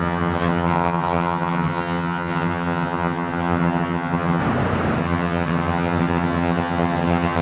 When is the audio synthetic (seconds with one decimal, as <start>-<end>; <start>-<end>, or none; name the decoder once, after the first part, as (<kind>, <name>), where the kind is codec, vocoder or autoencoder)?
0.0-4.4 (vocoder, HiFi-GAN); 5.0-7.4